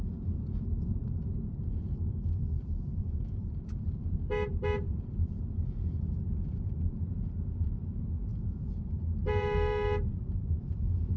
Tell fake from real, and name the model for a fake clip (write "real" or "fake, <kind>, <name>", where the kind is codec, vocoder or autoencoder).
fake, vocoder, BigVGAN v2